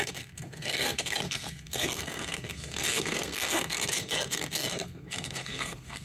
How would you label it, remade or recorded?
remade